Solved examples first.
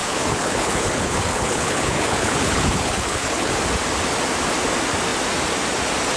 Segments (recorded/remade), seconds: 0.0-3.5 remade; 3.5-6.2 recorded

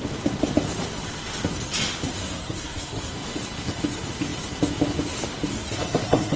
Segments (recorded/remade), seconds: 0.0-2.2 recorded; 2.2-3.1 remade; 3.1-5.5 recorded; 5.5-6.4 remade